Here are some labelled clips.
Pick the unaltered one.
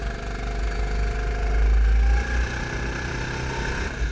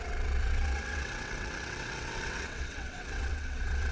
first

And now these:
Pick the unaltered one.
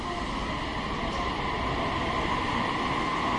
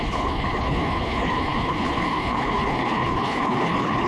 first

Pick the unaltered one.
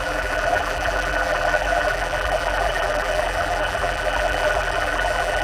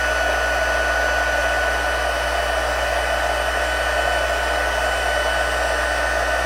second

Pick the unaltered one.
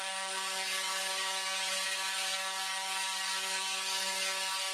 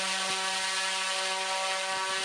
second